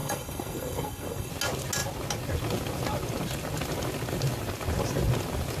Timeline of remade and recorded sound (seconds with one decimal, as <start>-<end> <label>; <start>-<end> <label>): 0.0-1.3 remade; 1.3-5.6 recorded